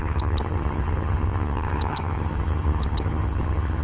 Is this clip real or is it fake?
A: fake